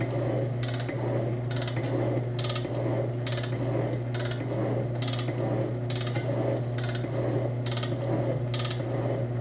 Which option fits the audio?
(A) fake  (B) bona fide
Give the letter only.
B